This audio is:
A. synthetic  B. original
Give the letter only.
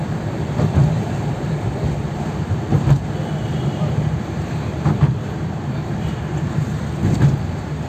A